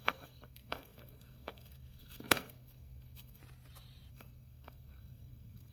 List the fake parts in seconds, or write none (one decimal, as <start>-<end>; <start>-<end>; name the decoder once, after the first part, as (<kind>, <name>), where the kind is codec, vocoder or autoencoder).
0.0-3.4 (codec, SNAC); 4.1-5.7